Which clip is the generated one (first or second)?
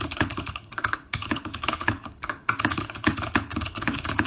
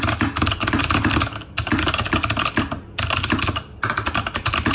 first